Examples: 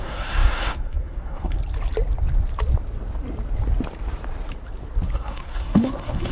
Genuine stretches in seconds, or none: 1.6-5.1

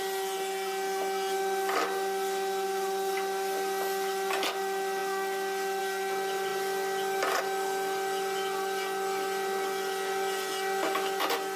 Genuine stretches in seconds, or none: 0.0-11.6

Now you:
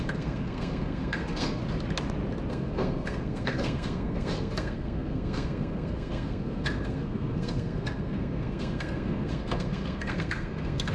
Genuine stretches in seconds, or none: 1.6-2.5

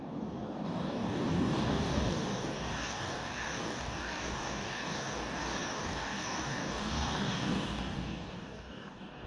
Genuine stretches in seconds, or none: none